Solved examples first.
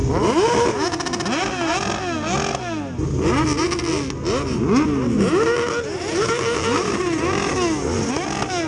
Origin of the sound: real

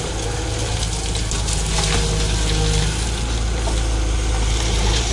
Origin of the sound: real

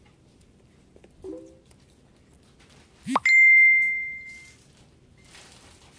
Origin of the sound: real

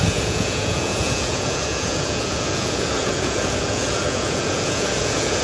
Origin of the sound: fake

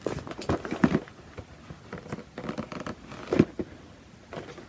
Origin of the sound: real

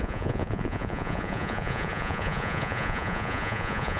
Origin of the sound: fake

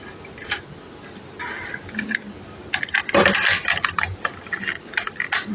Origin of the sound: real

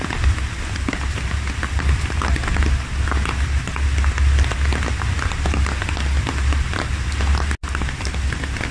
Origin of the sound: real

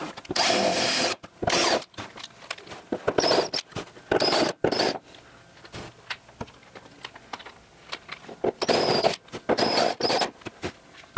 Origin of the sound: real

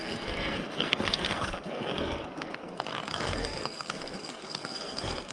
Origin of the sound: fake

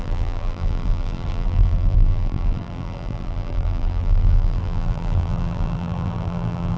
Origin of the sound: fake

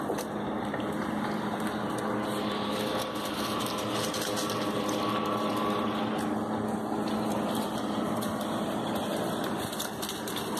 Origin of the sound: real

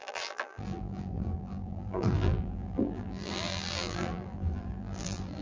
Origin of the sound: fake